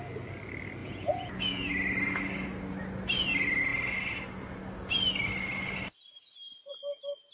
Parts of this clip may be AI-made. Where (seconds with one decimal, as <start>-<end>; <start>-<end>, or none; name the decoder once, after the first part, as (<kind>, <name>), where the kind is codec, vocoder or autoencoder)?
0.8-1.7 (vocoder, Vocos)